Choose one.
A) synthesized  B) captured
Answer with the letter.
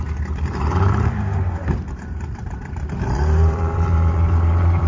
A